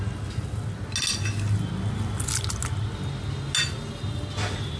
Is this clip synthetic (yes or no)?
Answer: no